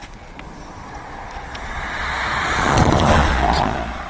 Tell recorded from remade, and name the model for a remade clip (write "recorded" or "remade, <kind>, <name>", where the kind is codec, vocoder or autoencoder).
remade, vocoder, Vocos